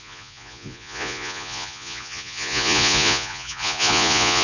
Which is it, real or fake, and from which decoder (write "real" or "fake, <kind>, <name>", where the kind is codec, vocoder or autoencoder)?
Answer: fake, vocoder, Vocos